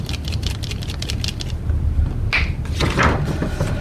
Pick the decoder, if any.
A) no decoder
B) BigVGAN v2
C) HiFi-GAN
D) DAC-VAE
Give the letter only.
A